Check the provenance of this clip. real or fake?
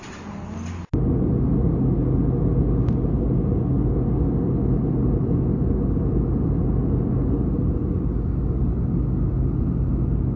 real